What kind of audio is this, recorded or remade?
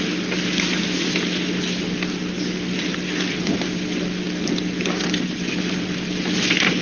recorded